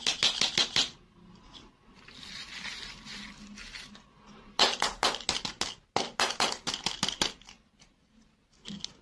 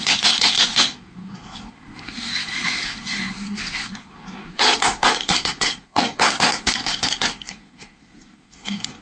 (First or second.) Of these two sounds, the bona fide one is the first